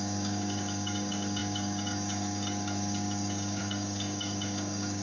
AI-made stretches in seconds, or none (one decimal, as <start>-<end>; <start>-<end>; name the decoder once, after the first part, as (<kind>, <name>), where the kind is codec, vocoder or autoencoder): 0.0-5.0 (codec, DAC)